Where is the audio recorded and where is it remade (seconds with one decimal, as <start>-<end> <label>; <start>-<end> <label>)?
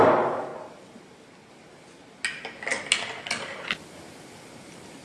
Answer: 0.0-5.0 recorded